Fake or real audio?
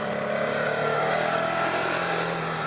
fake